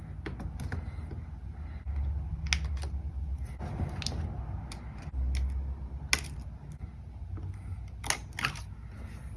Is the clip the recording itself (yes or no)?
yes